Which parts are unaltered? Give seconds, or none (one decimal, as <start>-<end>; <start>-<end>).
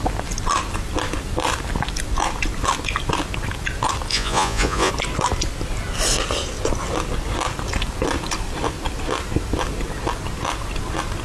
0.0-4.1; 4.9-11.2